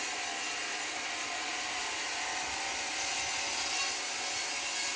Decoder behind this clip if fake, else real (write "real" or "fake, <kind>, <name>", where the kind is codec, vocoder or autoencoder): real